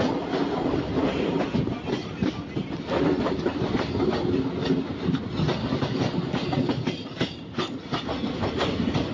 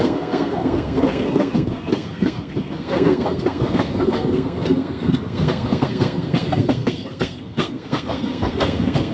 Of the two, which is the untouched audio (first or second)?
first